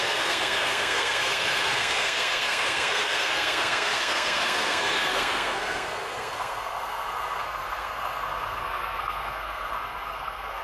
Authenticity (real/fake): fake